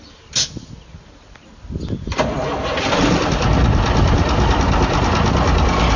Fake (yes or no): no